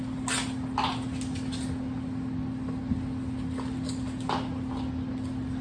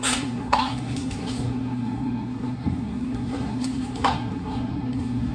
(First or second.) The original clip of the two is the first